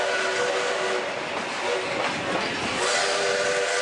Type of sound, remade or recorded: recorded